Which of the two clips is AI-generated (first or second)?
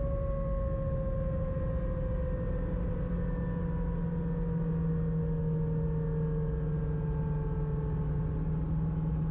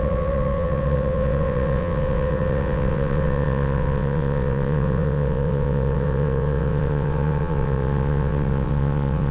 second